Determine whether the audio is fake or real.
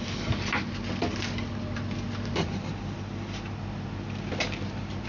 fake